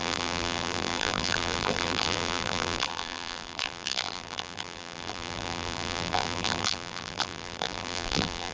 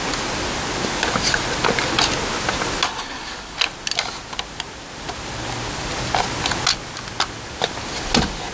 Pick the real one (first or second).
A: second